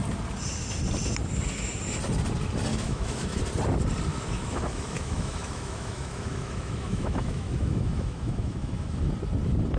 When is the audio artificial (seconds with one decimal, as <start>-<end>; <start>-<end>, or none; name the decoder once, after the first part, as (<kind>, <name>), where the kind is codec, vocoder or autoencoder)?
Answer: 2.7-3.4 (autoencoder, DAC-VAE); 4.1-9.1